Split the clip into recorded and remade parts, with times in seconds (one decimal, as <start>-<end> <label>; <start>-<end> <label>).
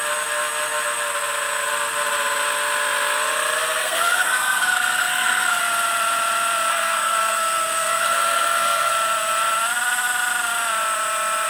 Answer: 0.0-3.8 recorded; 3.8-5.6 remade; 5.6-6.7 recorded; 6.7-8.9 remade; 8.9-11.5 recorded